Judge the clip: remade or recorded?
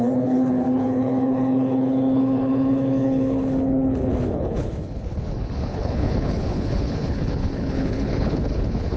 remade